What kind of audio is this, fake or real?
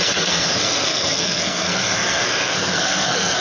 fake